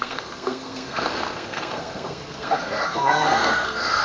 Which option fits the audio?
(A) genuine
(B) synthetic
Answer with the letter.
B